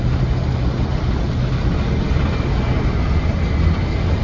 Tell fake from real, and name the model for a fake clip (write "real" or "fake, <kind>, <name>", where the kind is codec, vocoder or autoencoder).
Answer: real